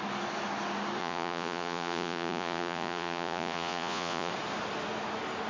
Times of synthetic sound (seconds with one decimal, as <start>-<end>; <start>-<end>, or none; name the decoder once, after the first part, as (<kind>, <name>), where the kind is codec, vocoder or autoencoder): 1.0-4.3 (vocoder, Vocos)